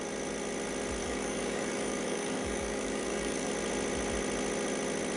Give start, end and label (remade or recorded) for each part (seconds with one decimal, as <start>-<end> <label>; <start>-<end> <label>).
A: 0.0-1.0 recorded; 1.0-3.5 remade; 3.5-5.2 recorded